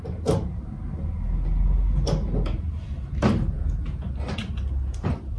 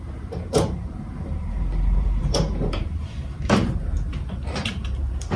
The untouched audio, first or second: first